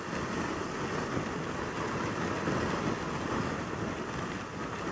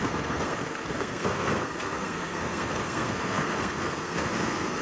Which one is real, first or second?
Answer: first